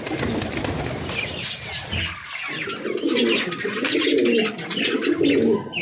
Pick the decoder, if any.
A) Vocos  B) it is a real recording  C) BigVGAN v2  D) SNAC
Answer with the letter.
B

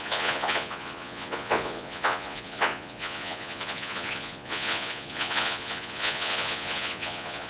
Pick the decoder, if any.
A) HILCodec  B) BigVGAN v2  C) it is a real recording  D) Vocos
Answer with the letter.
D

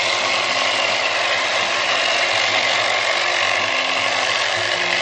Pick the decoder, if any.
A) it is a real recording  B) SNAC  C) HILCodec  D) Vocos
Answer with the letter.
A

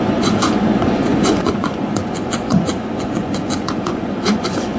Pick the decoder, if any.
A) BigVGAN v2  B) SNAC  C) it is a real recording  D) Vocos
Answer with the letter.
D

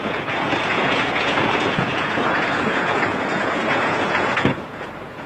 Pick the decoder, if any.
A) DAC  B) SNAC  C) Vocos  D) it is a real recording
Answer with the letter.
C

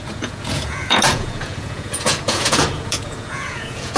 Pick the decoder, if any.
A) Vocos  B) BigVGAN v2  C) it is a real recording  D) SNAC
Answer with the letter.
A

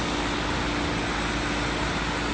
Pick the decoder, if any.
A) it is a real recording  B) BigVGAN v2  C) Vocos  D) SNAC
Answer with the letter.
A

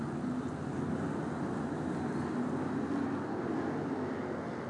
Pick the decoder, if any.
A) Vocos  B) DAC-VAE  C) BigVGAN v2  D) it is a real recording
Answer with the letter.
D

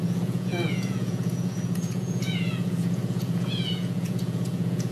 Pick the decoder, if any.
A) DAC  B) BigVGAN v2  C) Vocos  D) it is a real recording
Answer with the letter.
C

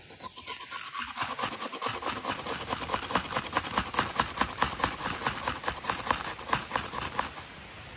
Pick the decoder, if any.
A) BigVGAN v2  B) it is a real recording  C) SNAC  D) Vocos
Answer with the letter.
B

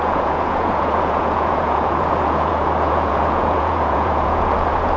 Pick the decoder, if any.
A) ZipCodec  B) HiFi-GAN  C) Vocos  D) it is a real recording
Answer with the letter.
C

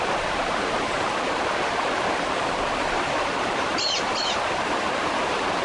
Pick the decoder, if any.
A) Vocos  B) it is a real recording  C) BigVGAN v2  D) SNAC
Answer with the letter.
B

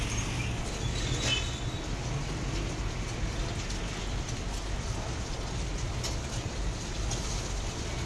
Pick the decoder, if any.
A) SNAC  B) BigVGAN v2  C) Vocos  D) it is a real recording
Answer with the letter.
D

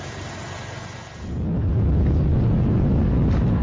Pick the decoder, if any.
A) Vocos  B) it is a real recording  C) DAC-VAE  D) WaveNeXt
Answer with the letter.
B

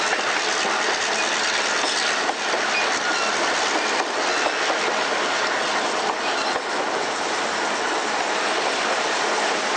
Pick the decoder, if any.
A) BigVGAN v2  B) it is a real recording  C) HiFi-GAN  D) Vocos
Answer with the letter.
B